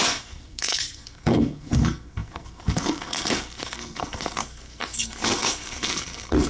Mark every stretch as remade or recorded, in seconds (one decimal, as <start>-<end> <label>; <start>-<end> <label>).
0.0-6.5 remade